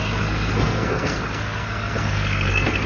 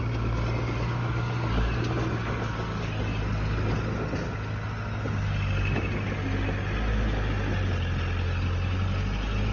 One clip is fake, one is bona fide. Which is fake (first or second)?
first